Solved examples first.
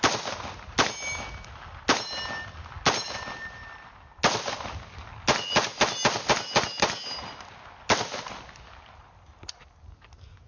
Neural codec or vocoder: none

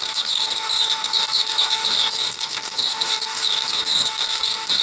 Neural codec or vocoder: codec, DAC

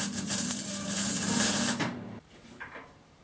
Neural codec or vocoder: vocoder, BigVGAN v2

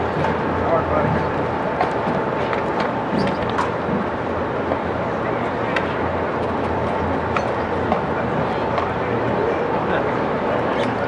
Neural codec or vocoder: none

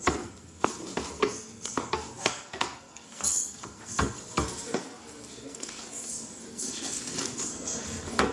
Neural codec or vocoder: codec, SNAC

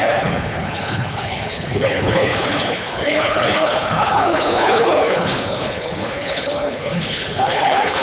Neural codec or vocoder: codec, HILCodec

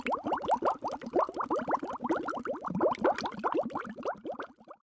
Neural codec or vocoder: none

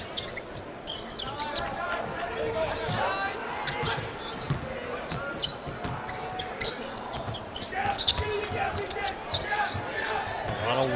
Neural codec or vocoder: none